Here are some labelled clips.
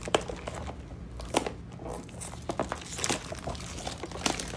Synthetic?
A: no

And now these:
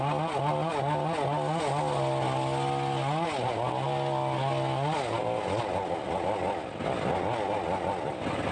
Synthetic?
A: no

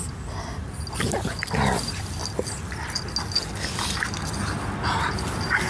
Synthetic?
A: no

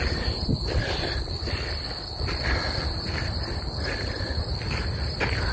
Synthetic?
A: no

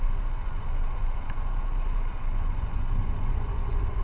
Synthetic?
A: yes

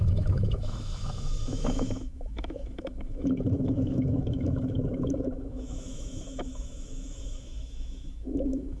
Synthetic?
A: yes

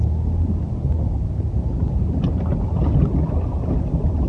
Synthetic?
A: no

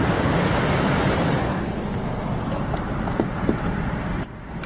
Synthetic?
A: no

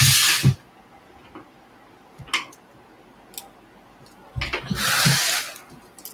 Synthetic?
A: no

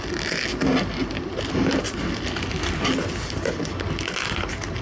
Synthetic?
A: no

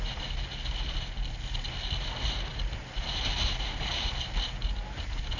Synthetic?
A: no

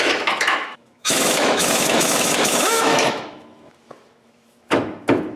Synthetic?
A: yes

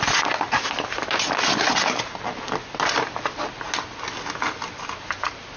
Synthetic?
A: no